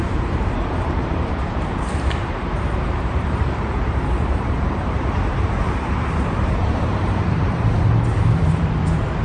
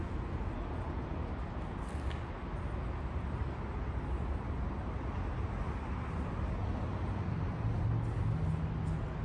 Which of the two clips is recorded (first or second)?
second